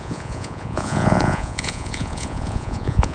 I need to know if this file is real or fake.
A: fake